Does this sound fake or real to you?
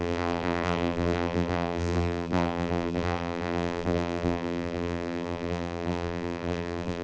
fake